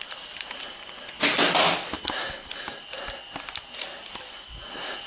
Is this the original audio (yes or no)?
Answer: yes